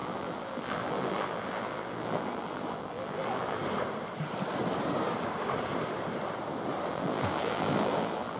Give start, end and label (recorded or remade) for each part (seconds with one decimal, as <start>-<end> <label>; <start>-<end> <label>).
0.0-3.6 remade; 3.6-6.9 recorded; 6.9-8.4 remade